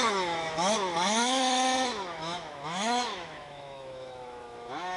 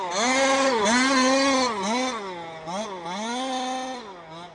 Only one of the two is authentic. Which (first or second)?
second